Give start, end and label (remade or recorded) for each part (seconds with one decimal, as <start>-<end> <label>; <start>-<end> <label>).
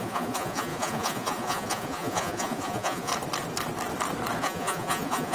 0.0-3.1 remade; 3.1-4.4 recorded; 4.4-5.3 remade